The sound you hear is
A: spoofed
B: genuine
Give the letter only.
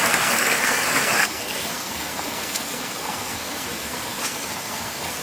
A